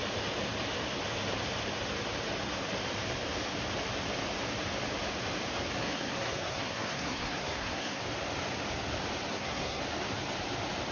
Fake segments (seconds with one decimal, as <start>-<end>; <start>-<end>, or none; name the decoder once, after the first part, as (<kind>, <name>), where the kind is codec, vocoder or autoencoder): 5.8-8.0 (codec, SNAC); 9.3-9.8